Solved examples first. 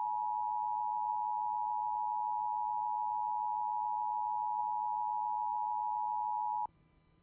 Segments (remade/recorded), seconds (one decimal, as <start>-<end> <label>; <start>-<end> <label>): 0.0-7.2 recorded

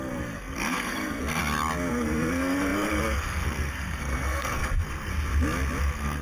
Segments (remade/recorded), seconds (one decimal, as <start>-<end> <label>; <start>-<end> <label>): 0.0-1.4 remade; 1.4-1.9 recorded; 1.9-5.1 remade; 5.1-5.8 recorded; 5.8-6.2 remade

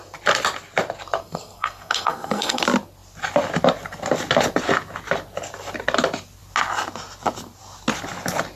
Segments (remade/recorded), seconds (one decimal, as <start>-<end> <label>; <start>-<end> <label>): 0.0-1.2 recorded; 1.2-2.6 remade; 2.6-8.6 recorded

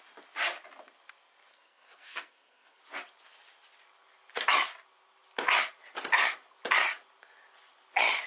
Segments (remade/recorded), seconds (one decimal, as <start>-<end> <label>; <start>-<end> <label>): 0.0-1.5 recorded; 1.5-2.8 remade; 2.8-8.3 recorded

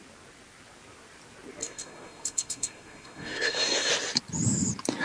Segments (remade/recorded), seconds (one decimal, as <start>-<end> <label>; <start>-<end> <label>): 0.0-1.6 recorded; 1.6-3.9 remade; 3.9-5.0 recorded

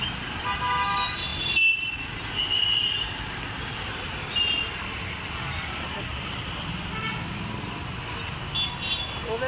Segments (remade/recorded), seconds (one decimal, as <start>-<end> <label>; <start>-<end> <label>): 0.0-9.5 recorded

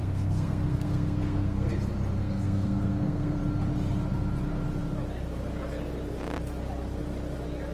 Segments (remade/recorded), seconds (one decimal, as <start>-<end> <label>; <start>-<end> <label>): 0.0-1.7 remade; 1.7-2.2 recorded; 2.2-3.4 remade; 3.4-7.7 recorded